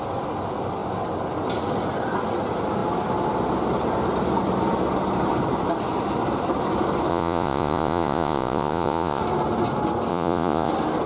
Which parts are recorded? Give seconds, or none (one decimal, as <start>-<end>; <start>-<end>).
0.0-7.1; 9.2-10.1; 10.7-11.1